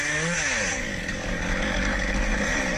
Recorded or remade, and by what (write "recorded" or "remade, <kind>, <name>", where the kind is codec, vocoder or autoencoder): remade, codec, DAC